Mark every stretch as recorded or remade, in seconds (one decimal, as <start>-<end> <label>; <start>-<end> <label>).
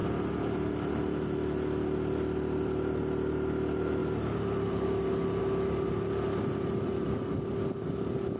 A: 0.0-8.4 recorded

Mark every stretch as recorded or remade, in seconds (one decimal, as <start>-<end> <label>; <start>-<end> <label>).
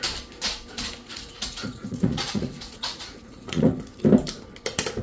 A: 0.0-1.0 recorded; 1.0-4.0 remade; 4.0-5.0 recorded